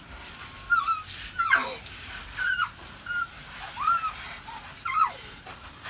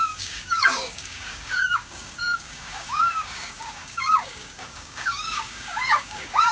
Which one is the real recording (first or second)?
first